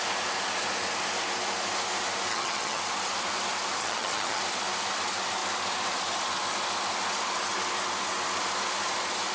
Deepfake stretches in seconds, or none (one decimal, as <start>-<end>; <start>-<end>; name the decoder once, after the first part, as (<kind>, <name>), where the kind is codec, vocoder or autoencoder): 2.3-2.8 (vocoder, HiFi-GAN); 3.8-4.4